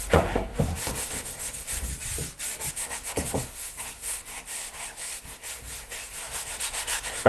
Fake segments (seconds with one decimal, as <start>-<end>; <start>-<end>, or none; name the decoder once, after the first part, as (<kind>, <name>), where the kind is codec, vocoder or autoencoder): 0.0-1.9 (codec, SNAC); 2.7-7.3